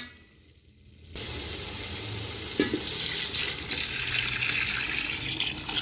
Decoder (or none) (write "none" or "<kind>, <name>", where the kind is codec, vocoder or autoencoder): none